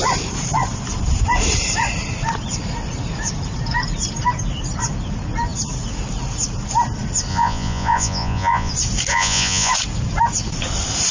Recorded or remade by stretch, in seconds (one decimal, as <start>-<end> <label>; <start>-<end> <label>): 0.0-7.3 recorded; 7.3-8.7 remade; 8.7-9.1 recorded; 9.1-9.7 remade; 9.7-11.1 recorded